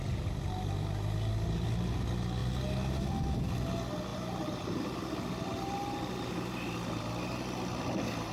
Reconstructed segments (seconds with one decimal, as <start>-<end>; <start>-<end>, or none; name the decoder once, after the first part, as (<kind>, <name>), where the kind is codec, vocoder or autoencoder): none